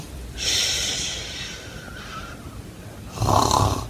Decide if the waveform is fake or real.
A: fake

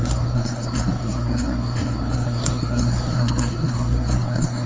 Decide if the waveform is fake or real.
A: fake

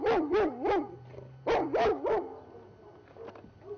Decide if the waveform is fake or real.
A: real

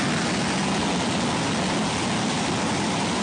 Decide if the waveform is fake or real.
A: real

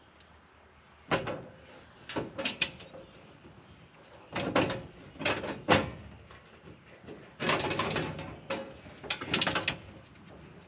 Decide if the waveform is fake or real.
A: real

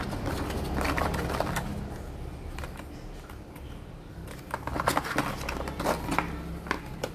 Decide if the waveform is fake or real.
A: real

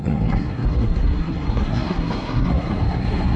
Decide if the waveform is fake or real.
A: fake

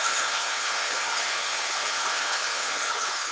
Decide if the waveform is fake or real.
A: fake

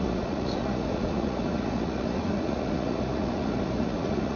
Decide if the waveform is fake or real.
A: fake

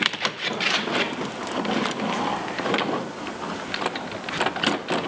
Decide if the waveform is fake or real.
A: real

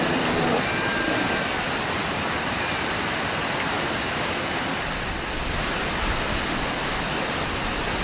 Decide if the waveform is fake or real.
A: real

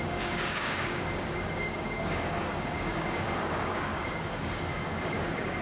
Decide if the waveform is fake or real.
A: fake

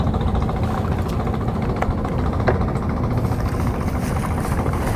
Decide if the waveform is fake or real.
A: real